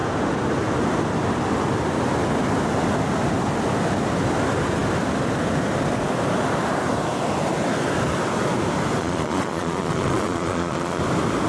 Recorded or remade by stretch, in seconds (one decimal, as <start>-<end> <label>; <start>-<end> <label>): 0.0-9.0 recorded; 9.0-11.0 remade; 11.0-11.5 recorded